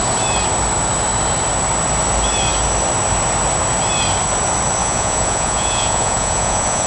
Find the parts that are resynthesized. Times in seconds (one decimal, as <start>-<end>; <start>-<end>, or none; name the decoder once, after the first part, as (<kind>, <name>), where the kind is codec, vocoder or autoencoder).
4.8-6.9 (vocoder, Vocos)